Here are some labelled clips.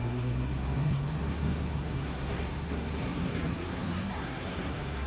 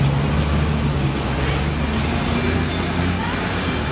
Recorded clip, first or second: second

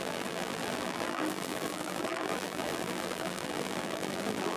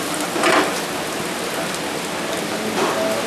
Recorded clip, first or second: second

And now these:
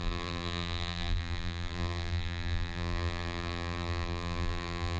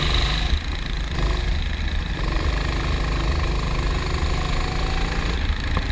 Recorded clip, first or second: second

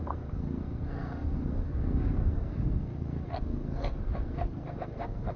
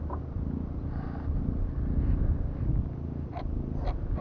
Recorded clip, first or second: second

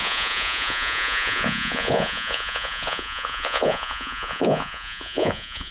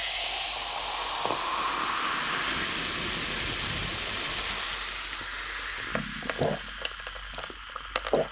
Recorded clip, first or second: second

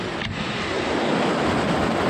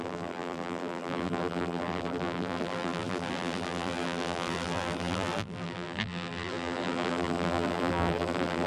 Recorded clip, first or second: first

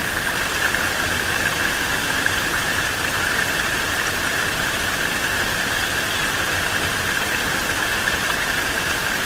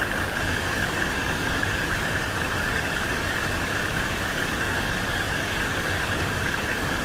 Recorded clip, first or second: first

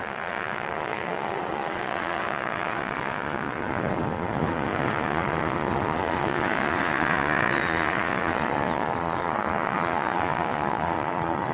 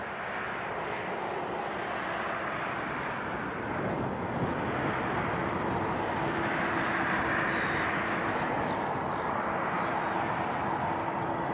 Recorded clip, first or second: second